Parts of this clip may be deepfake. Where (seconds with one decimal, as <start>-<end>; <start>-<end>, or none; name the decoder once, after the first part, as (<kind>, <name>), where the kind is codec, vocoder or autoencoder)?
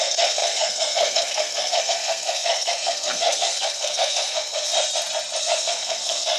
0.0-4.7 (codec, SNAC); 5.4-6.4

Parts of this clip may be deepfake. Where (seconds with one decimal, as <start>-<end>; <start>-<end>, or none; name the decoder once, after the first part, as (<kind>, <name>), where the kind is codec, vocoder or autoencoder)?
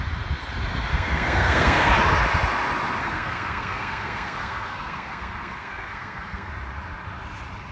0.9-1.9 (codec, SNAC); 3.0-6.5